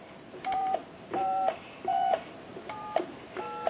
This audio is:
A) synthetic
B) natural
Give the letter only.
A